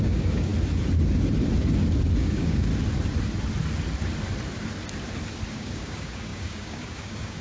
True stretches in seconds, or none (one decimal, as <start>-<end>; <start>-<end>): 0.5-2.2; 2.7-5.5